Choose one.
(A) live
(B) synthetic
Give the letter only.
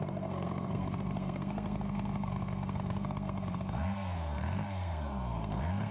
B